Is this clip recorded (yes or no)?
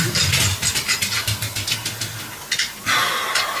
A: yes